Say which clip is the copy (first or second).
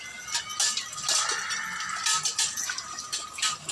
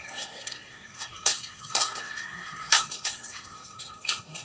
second